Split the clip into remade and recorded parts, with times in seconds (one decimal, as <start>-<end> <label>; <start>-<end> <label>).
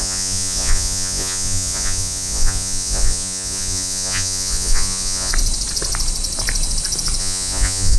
0.0-5.3 remade; 5.3-7.2 recorded; 7.2-8.0 remade